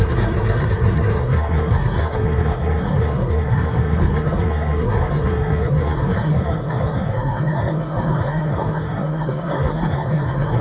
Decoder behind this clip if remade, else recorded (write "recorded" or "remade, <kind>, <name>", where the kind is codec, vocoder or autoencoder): remade, codec, SNAC